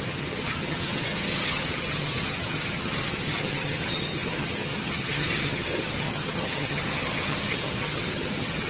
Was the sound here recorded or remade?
remade